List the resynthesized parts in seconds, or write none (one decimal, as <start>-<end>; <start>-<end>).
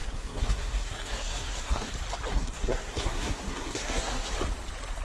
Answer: 0.0-1.9; 2.3-4.3